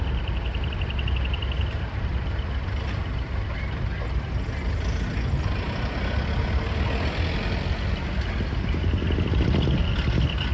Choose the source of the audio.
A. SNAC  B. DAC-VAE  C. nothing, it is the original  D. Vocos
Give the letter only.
C